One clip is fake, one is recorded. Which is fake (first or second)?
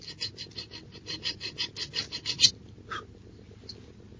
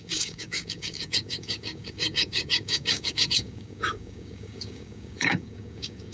second